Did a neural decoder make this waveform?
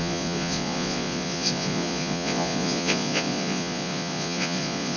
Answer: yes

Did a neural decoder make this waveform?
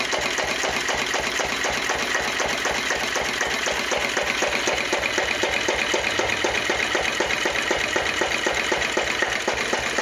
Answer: no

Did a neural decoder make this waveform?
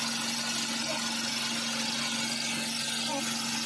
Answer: no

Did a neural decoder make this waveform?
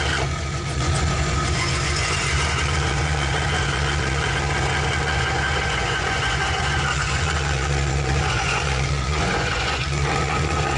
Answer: yes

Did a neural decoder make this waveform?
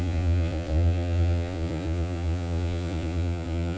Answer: yes